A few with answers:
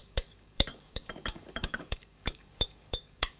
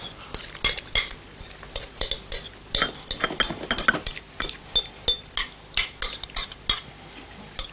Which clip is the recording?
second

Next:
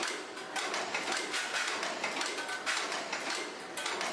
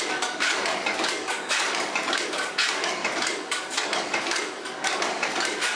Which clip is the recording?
first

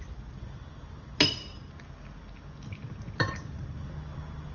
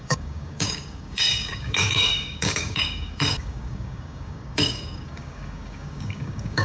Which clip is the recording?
first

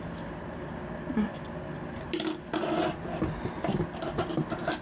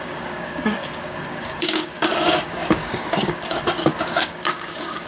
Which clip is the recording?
first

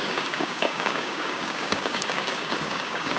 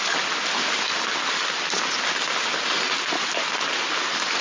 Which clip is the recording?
second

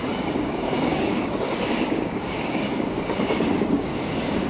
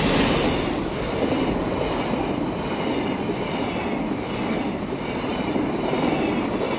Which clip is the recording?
second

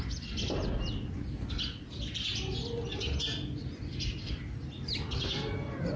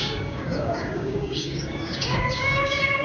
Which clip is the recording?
first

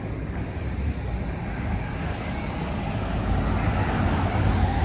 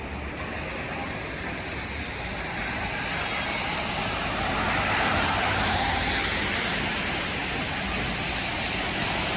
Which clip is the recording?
second